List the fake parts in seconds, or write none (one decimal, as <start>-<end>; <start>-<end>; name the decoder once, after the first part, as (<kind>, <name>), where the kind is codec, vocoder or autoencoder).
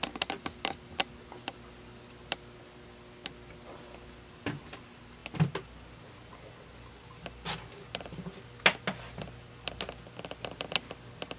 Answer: none